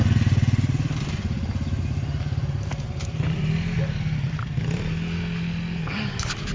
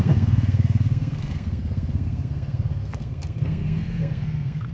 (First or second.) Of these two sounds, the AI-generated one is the second